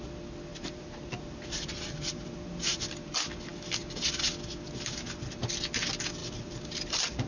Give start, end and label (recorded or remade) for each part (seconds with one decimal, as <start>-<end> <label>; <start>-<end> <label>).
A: 0.0-0.5 recorded; 0.5-2.8 remade; 2.8-6.2 recorded; 6.2-7.3 remade